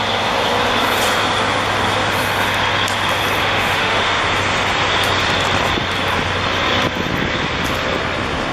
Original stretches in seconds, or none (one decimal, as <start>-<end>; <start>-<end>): 0.0-3.4; 4.2-8.5